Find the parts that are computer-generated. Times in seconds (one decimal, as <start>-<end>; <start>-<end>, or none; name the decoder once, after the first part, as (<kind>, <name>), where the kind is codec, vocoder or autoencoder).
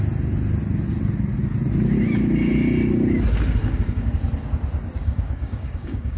3.6-4.1 (codec, DAC); 5.0-6.2